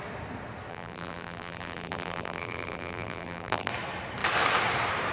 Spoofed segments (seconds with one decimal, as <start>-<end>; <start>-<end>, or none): 0.7-3.7